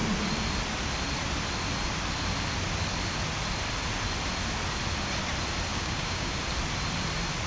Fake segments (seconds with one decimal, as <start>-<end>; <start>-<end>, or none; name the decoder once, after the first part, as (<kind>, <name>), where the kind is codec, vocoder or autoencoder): 5.7-6.3 (codec, DAC)